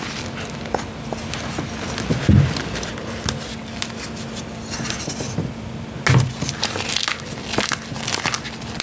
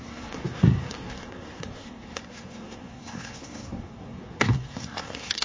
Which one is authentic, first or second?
first